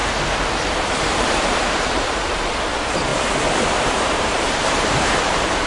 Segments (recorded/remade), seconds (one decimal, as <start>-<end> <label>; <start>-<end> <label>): 0.0-0.7 recorded; 0.7-3.1 remade; 3.1-3.8 recorded; 3.8-5.7 remade

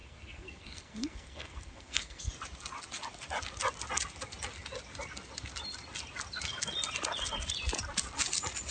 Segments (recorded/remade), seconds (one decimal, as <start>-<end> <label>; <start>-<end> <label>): 0.0-2.3 remade; 2.3-8.7 recorded

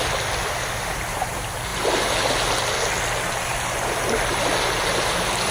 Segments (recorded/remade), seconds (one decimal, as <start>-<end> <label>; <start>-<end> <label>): 0.0-5.5 recorded